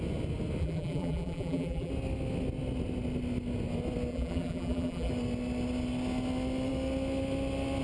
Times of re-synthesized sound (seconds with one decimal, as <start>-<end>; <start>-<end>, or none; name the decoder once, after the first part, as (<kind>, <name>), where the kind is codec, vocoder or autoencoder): 0.6-1.9 (vocoder, BigVGAN v2); 4.1-5.1

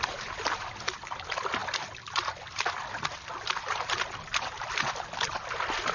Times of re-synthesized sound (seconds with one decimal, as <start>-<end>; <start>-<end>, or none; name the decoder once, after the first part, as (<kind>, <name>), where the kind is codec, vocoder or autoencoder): 0.0-1.6 (vocoder, BigVGAN v2); 5.1-5.9